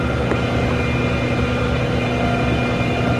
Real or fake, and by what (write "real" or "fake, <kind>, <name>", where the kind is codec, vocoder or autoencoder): real